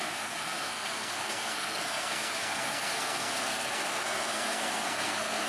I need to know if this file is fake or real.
fake